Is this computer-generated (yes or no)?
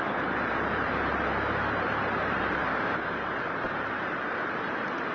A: yes